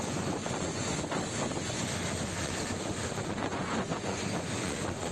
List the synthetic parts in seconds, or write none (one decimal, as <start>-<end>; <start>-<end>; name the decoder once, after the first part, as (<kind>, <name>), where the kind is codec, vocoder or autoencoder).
0.0-0.9 (vocoder, Vocos); 1.6-5.1